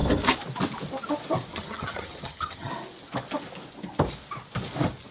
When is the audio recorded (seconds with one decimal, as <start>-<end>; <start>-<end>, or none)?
0.0-1.5; 2.7-5.1